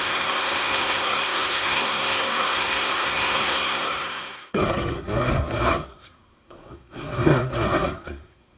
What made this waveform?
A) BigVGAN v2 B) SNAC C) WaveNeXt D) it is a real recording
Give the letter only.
B